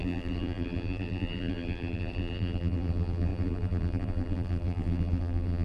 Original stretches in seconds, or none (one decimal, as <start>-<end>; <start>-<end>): none